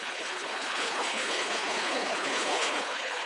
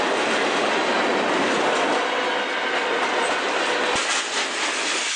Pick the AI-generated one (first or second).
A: first